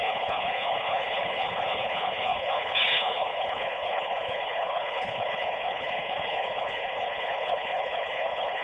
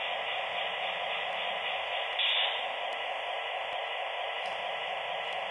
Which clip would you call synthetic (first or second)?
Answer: first